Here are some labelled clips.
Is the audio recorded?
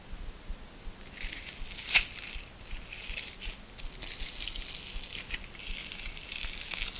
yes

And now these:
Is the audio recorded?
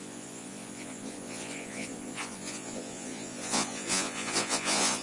no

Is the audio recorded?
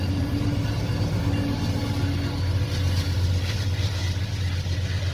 yes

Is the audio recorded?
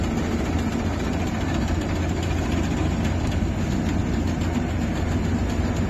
yes